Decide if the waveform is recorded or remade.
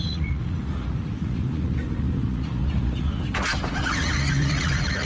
remade